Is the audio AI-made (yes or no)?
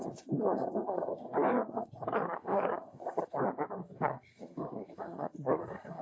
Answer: yes